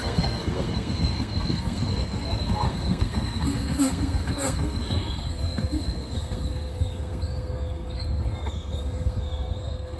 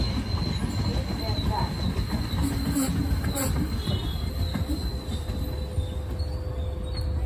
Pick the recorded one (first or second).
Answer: second